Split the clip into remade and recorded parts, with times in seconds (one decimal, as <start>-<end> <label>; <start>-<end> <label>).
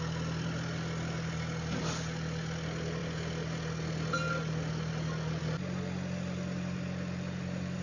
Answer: 0.0-7.8 recorded